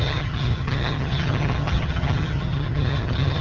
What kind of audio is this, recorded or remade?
remade